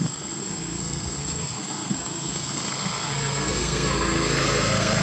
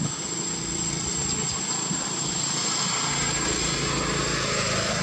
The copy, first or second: first